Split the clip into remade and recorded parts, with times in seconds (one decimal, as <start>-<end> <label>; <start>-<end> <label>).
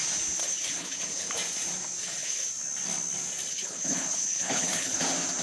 0.0-0.4 recorded; 0.4-1.3 remade; 1.3-2.0 recorded; 2.0-2.5 remade; 2.5-3.5 recorded; 3.5-5.0 remade; 5.0-5.4 recorded